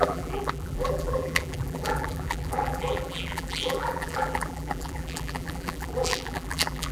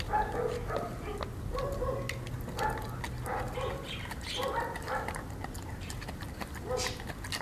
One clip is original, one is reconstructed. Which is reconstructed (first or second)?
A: first